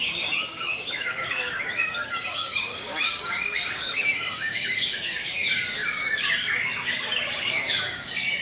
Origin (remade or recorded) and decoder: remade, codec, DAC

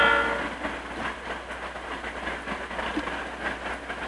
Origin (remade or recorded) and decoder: recorded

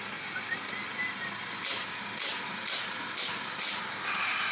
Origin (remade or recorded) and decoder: recorded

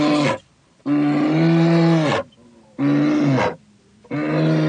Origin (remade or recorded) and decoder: recorded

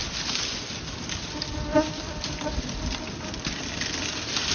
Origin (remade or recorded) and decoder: recorded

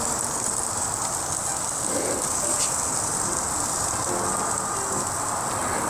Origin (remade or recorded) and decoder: recorded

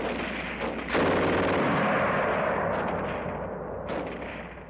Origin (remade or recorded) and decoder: recorded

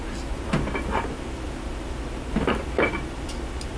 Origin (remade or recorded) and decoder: recorded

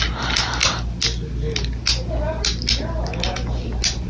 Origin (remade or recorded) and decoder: recorded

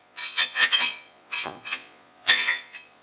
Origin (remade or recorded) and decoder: remade, vocoder, Vocos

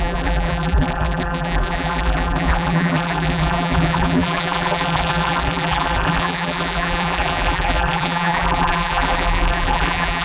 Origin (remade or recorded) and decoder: remade, vocoder, BigVGAN v2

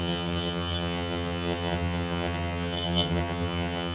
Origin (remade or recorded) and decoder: remade, vocoder, HiFi-GAN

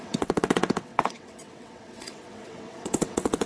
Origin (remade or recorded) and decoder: remade, vocoder, WaveNeXt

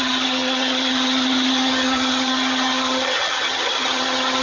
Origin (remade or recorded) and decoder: remade, vocoder, HiFi-GAN